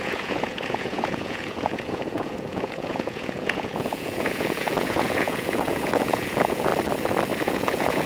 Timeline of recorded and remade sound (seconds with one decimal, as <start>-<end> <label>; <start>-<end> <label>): 0.0-6.7 remade; 6.7-7.4 recorded; 7.4-8.1 remade